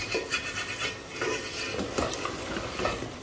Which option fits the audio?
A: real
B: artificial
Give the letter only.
B